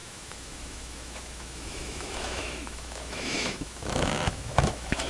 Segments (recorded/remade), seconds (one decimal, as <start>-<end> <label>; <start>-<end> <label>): 0.0-5.1 remade